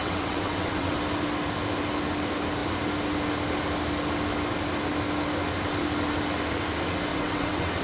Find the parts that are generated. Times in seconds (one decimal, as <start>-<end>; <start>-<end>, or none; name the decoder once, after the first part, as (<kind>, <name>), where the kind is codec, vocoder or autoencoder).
0.0-0.9 (vocoder, WaveNeXt); 7.1-7.8